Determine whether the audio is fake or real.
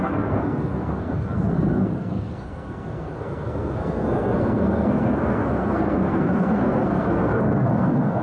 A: fake